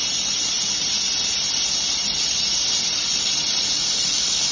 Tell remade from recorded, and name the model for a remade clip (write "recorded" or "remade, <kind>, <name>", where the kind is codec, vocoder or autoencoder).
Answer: recorded